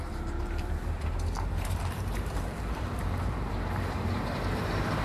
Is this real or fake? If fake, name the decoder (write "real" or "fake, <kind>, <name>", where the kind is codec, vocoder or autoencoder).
fake, vocoder, BigVGAN v2